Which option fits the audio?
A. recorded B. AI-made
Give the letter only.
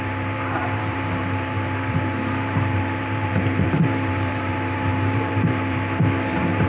B